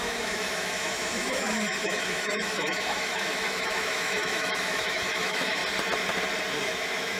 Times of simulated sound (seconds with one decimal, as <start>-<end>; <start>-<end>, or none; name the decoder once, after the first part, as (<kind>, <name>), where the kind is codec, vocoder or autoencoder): 0.0-5.6 (autoencoder, DAC-VAE); 6.6-7.2